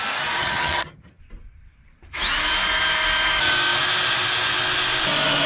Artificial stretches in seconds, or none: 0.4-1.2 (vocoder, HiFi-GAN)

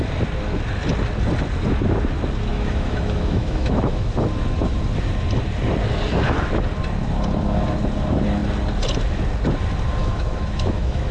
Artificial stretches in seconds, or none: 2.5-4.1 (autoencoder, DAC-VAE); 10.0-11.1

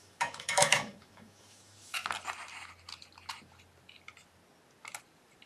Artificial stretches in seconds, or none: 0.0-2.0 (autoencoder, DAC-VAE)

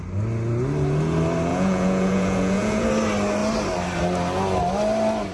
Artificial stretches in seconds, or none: 1.5-2.9 (vocoder, Vocos)